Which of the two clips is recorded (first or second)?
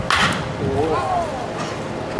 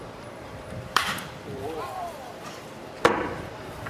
first